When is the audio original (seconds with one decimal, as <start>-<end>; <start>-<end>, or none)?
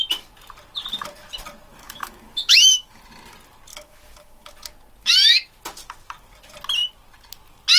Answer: 0.0-1.7; 3.0-3.7; 4.5-7.8